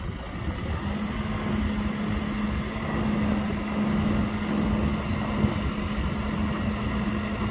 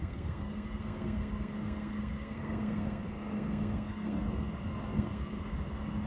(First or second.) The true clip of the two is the first